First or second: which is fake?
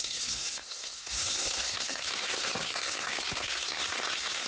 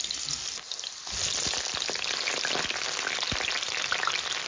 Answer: first